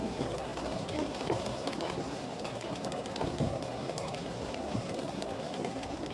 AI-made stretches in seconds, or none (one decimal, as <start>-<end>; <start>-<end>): 0.0-6.1